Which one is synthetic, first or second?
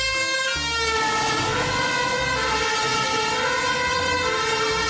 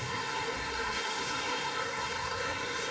second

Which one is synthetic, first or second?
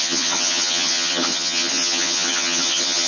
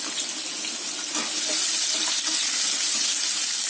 first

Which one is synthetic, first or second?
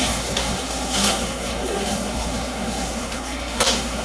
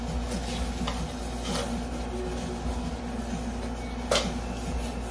first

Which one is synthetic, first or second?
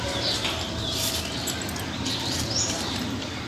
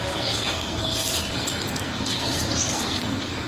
second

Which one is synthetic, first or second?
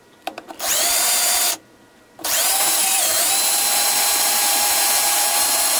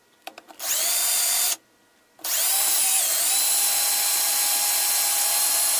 first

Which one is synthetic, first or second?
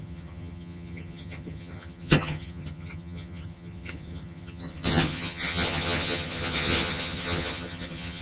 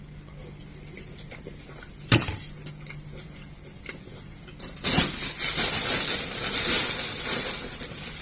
first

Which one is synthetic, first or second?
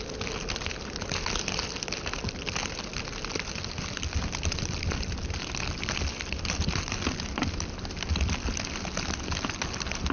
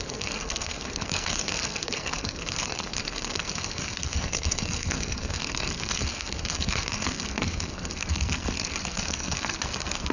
second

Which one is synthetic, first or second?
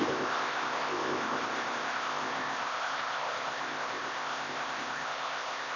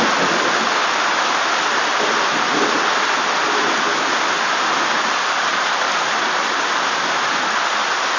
first